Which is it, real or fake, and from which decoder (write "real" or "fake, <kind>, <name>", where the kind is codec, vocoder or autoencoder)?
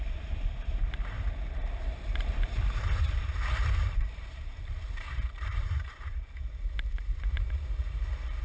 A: fake, vocoder, BigVGAN v2